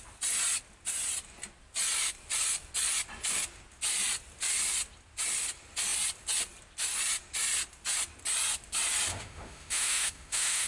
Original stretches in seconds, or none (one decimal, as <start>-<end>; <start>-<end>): 0.0-9.1

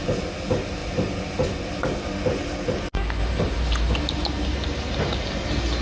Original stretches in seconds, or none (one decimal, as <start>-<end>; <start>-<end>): 0.0-5.8

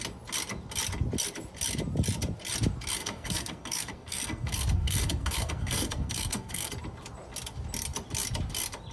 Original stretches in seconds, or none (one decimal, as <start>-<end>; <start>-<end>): 0.0-3.0; 6.7-8.9

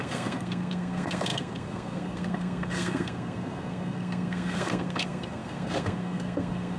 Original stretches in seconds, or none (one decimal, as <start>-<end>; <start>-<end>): none